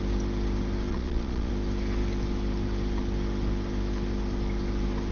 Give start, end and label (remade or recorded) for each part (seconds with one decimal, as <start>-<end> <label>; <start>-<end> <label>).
0.0-0.9 recorded; 0.9-1.5 remade; 1.5-5.1 recorded

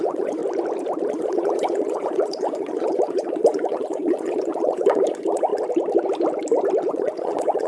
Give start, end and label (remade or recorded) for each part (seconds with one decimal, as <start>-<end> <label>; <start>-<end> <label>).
0.0-0.4 remade; 0.4-1.1 recorded; 1.1-5.5 remade; 5.5-6.9 recorded; 6.9-7.7 remade

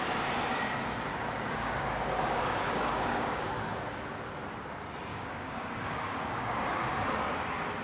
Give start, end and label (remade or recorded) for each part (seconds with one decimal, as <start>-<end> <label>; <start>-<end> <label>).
0.0-1.1 recorded; 1.1-3.6 remade; 3.6-5.1 recorded; 5.1-6.9 remade; 6.9-7.8 recorded

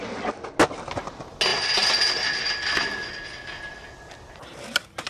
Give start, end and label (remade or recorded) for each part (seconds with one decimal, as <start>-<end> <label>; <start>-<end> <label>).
0.0-5.1 recorded

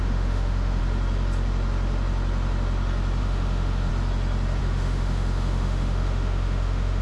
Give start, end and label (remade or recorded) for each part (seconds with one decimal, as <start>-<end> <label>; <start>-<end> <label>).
0.0-0.8 remade; 0.8-3.2 recorded; 3.2-3.9 remade; 3.9-4.6 recorded; 4.6-7.0 remade

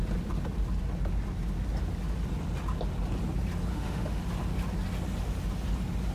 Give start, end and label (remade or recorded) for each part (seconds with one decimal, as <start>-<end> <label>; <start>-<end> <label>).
0.0-3.7 recorded; 3.7-4.2 remade; 4.2-6.1 recorded

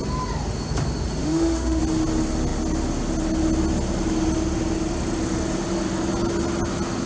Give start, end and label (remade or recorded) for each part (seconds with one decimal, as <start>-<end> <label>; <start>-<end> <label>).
0.0-1.2 recorded; 1.2-1.8 remade; 1.8-7.1 recorded